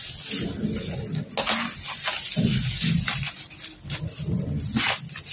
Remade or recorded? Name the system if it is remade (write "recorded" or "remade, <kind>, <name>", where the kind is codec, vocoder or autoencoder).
recorded